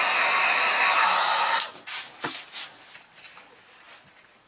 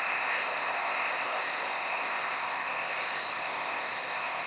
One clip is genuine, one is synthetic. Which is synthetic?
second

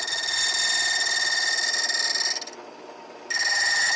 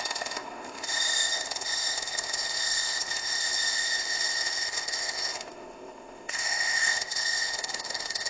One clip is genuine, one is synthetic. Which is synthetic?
second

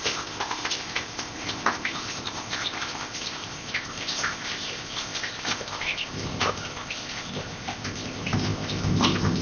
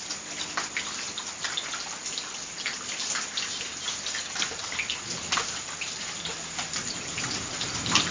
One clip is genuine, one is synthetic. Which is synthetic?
first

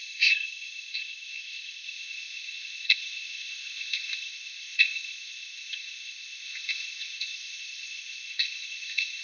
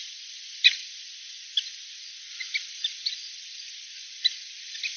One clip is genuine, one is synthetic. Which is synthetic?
first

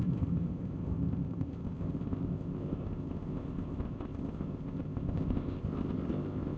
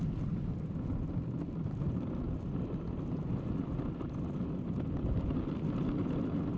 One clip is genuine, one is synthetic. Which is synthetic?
first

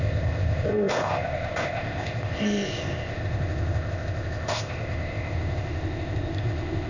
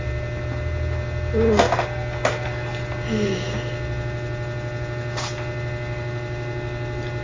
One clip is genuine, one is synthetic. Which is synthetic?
first